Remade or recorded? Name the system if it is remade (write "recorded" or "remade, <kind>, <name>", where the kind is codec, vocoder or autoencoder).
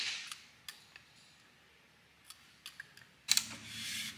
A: recorded